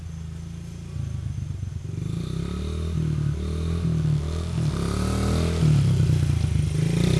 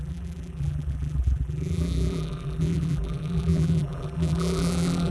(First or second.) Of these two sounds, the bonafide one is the first